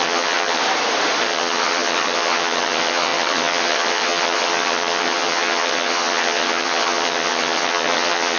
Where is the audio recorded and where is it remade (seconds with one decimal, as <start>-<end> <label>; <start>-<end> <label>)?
0.0-0.6 remade; 0.6-1.2 recorded; 1.2-8.4 remade